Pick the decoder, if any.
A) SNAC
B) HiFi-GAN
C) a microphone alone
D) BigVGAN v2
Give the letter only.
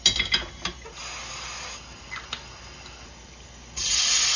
C